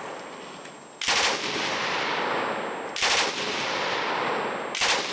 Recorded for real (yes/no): yes